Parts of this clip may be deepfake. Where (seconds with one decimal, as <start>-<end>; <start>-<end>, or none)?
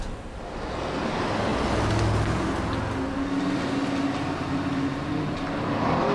none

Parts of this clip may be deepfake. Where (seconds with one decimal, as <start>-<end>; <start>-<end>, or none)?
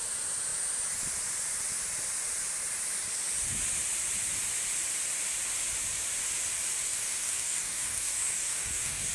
6.9-9.1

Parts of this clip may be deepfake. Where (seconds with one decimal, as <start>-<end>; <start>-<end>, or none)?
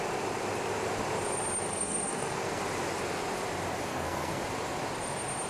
1.7-2.6; 3.9-4.4